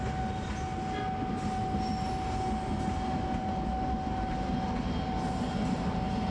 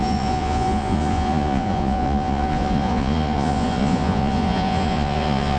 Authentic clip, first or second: first